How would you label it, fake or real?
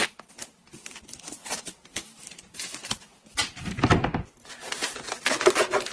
real